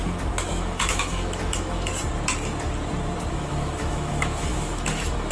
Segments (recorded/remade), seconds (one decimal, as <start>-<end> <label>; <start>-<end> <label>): 0.0-1.9 remade; 1.9-3.3 recorded; 3.3-5.3 remade